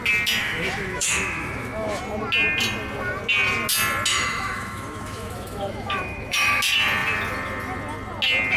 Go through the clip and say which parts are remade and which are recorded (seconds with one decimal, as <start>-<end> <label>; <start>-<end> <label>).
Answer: 0.0-0.4 recorded; 0.4-2.0 remade; 2.0-4.1 recorded; 4.1-6.6 remade; 6.6-8.6 recorded